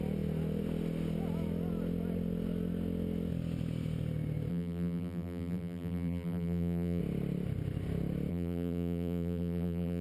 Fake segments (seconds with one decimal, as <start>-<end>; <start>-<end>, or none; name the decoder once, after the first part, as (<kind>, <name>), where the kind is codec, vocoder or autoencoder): 4.5-7.0 (vocoder, BigVGAN v2); 8.3-10.0